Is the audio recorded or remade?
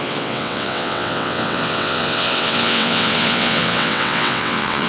remade